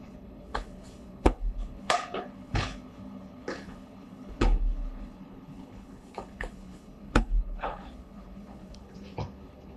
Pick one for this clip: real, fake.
fake